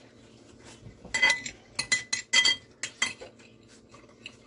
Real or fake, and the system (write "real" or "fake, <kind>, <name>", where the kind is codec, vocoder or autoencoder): real